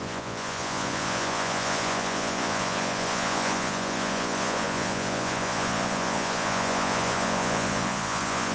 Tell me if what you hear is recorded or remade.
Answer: remade